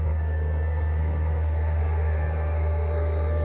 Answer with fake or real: fake